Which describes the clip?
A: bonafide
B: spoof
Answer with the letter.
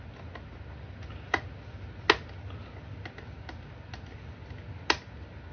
A